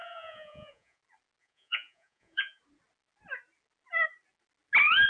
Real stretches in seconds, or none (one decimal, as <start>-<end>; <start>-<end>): 1.0-1.4; 2.6-5.1